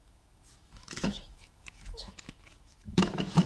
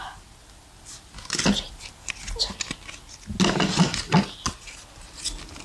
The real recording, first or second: second